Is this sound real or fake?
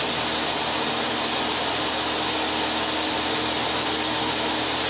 real